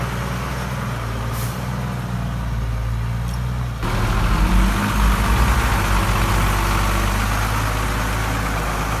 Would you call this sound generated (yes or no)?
no